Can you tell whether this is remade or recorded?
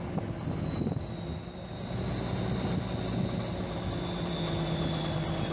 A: recorded